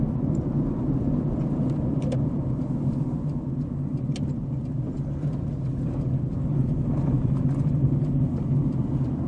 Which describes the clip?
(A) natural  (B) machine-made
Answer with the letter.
A